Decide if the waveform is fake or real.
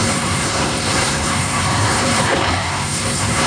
fake